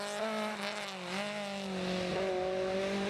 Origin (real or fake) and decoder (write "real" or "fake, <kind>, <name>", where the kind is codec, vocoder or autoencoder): real